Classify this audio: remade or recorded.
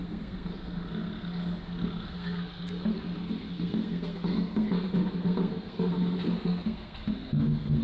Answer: remade